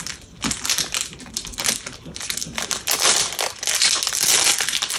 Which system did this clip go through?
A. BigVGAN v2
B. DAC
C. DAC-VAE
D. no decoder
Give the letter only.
D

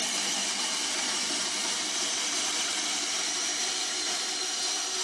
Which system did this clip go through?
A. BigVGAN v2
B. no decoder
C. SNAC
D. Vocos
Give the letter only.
A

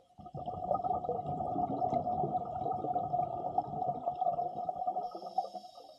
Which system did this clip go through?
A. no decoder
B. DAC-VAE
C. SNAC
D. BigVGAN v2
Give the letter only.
A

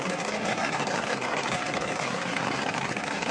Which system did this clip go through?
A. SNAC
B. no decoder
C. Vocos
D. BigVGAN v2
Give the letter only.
A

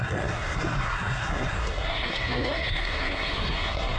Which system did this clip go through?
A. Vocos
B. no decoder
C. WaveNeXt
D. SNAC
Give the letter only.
D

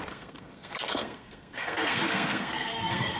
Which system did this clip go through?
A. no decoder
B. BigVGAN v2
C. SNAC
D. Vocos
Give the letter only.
C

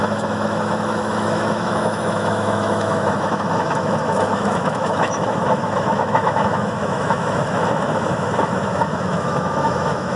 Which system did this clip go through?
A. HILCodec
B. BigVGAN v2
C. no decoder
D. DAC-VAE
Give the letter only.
D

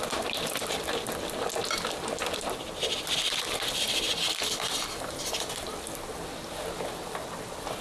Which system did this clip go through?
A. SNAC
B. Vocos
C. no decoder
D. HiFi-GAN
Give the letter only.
C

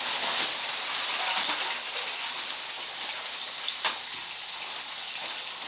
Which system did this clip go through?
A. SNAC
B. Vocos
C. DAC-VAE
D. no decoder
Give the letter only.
D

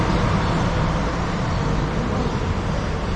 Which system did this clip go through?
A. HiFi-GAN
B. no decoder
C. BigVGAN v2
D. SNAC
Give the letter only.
B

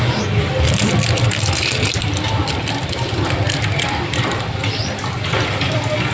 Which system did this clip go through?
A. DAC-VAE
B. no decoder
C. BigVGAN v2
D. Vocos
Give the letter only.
C